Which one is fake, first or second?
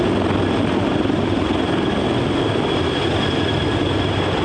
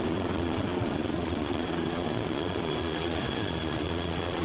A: second